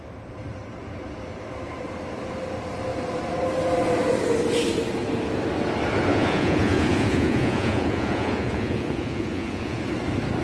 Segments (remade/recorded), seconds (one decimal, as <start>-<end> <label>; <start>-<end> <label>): 0.0-6.1 recorded; 6.1-9.8 remade; 9.8-10.4 recorded